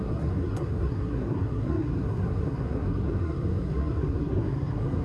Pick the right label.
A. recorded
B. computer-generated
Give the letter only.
B